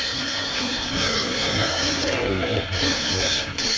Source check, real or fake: fake